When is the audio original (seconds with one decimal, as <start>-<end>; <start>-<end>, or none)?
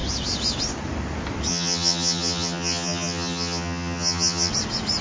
0.0-1.5; 4.5-5.0